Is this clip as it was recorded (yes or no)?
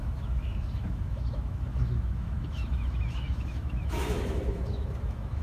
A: no